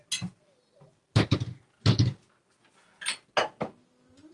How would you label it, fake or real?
real